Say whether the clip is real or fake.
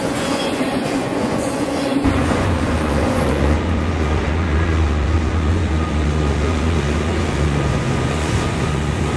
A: fake